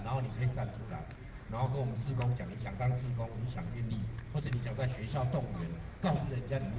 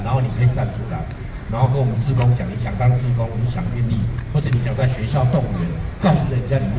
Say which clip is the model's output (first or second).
second